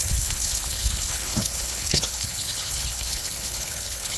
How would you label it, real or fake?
fake